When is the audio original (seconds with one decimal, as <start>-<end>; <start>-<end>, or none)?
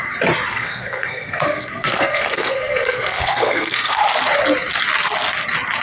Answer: 0.0-0.5; 4.0-5.8